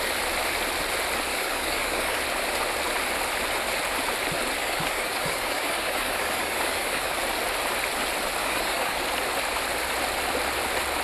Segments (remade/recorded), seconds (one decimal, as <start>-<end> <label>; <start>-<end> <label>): 0.0-1.3 recorded; 1.3-2.2 remade; 2.2-4.6 recorded; 4.6-7.2 remade; 7.2-8.4 recorded; 8.4-9.0 remade; 9.0-11.0 recorded

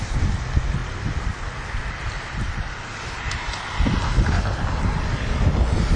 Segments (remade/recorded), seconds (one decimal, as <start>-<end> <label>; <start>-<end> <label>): 0.0-6.0 recorded

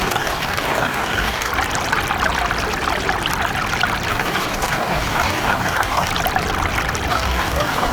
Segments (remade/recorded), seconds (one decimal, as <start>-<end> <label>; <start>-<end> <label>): 0.0-1.5 remade; 1.5-4.1 recorded; 4.1-6.1 remade; 6.1-7.1 recorded; 7.1-7.9 remade

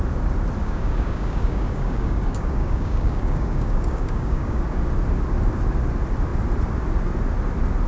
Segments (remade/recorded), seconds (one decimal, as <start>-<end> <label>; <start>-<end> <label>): 0.0-0.6 recorded; 0.6-4.6 remade; 4.6-7.9 recorded

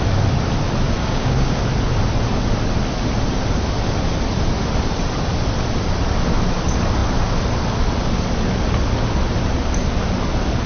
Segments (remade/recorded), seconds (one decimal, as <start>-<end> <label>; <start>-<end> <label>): 0.0-1.0 recorded; 1.0-1.6 remade; 1.6-10.7 recorded